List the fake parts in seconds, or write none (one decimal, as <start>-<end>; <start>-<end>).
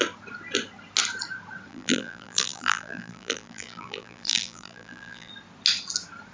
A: 1.7-5.3